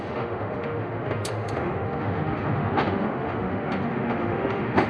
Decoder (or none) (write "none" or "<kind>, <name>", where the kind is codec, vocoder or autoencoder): autoencoder, DAC-VAE